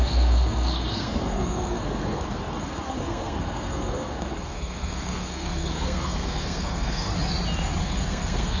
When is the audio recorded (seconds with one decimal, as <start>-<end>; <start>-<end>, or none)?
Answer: 7.1-7.8

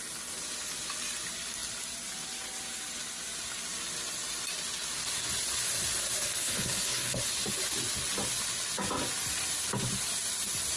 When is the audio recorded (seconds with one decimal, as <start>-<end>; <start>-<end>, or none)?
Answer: 0.0-6.4; 7.2-10.8

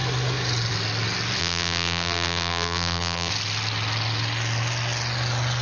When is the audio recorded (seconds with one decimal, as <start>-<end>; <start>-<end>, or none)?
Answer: 0.0-1.4; 3.3-5.6

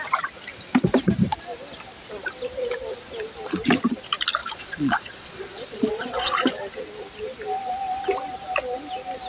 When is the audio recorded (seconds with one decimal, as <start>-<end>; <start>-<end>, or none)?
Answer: 0.0-4.4; 6.6-9.3

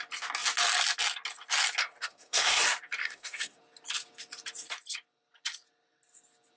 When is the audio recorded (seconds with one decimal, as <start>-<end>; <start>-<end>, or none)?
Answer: 0.0-1.8; 2.6-3.0; 3.6-6.6

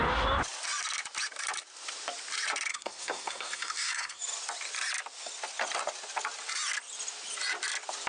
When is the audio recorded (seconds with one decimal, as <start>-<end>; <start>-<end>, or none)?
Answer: 0.0-2.7; 4.2-8.1

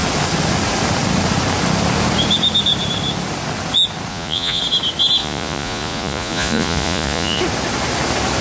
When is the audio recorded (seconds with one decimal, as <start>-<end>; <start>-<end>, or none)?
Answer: 0.0-4.1; 4.6-5.2; 7.4-8.4